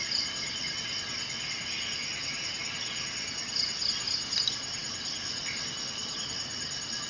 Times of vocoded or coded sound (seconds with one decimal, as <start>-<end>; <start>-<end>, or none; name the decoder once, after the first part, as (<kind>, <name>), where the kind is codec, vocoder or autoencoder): none